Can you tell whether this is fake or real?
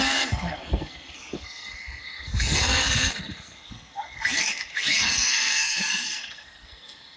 fake